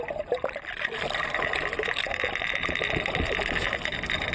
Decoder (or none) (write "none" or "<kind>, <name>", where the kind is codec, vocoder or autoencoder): none